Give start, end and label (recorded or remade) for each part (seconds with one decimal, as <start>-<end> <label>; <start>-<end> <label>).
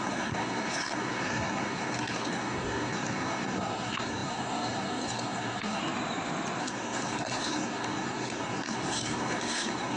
0.0-5.8 remade; 5.8-6.6 recorded; 6.6-10.0 remade